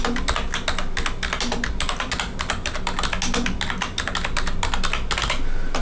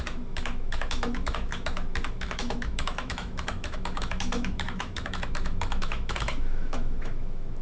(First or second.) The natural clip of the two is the first